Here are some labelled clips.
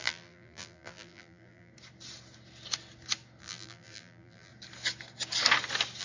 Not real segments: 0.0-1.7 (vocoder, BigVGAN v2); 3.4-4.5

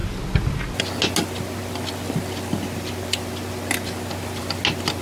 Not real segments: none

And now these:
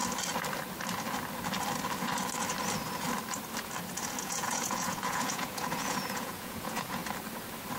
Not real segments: 4.2-7.0 (vocoder, Vocos)